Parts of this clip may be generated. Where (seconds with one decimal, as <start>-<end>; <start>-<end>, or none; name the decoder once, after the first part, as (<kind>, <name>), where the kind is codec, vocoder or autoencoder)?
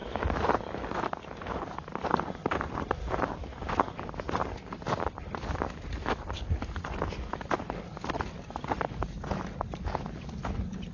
none